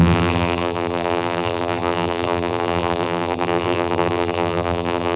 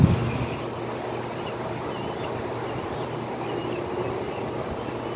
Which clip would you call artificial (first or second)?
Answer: first